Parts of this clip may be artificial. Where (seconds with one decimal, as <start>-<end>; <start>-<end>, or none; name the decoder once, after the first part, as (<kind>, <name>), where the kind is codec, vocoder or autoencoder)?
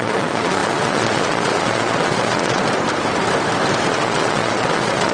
0.0-2.6 (vocoder, Vocos); 3.9-5.1